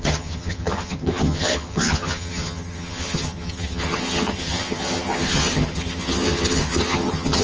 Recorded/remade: remade